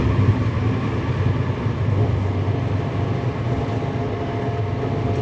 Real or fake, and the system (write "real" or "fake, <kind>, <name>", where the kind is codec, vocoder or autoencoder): real